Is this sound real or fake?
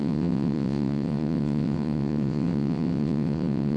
fake